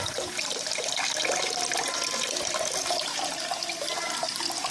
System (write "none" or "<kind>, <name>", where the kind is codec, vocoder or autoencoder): none